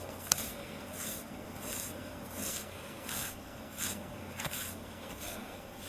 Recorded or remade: remade